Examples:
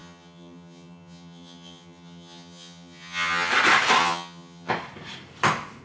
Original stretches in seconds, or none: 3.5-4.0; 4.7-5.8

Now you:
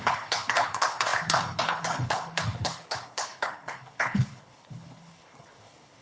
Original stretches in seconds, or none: none

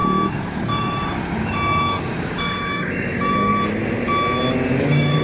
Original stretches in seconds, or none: 3.5-4.8

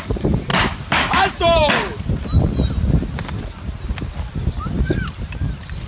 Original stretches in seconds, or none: 0.0-0.5; 1.7-5.9

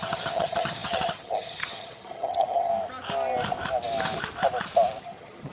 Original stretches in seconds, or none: 2.7-5.0